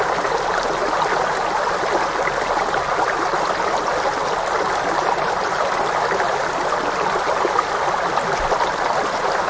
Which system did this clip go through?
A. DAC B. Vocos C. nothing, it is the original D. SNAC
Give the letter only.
C